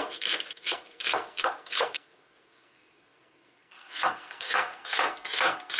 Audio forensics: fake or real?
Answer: fake